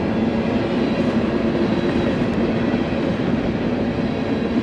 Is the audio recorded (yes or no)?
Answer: yes